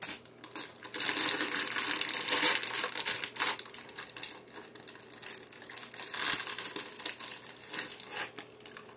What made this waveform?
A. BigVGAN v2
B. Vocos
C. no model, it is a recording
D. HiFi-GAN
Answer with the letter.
C